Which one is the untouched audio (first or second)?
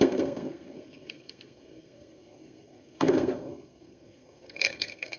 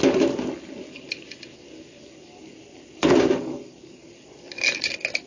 second